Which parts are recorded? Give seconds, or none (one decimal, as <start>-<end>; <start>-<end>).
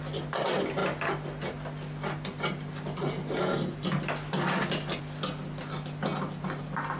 0.0-7.0